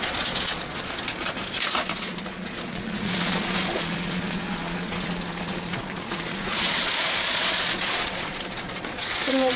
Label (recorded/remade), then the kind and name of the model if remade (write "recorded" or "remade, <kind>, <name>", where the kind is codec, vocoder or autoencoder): remade, vocoder, Vocos